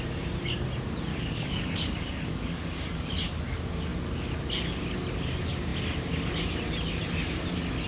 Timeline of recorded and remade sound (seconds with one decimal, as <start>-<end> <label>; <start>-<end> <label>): 0.0-1.1 recorded; 1.1-3.1 remade; 3.1-7.9 recorded